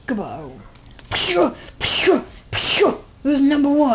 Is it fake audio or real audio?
real